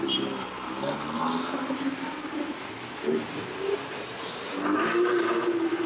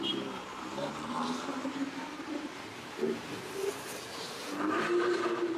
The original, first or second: first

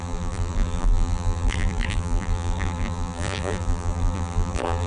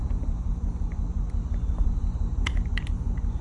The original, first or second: second